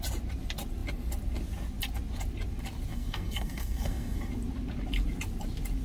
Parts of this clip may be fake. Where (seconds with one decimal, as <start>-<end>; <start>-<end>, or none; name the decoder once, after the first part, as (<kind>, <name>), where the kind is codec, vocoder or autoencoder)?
2.9-4.3 (codec, SNAC)